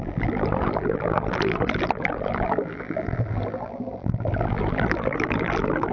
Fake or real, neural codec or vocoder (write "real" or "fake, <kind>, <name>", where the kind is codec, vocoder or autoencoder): fake, vocoder, BigVGAN v2